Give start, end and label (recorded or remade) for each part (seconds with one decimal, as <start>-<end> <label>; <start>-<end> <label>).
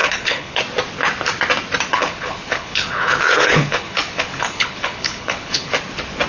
0.0-0.6 remade; 0.6-1.9 recorded; 1.9-5.7 remade; 5.7-6.3 recorded